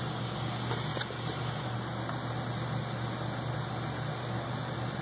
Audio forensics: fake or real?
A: real